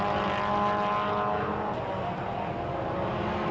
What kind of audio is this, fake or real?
real